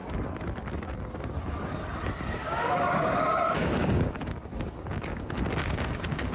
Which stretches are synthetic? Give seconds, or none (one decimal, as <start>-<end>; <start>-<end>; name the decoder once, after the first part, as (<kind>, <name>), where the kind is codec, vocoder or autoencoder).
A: 2.3-6.3 (codec, DAC)